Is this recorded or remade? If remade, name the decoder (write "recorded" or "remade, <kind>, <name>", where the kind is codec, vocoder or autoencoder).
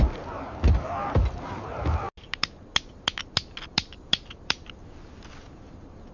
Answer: recorded